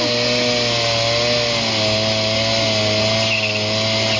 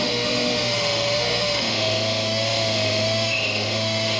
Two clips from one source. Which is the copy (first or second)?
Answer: second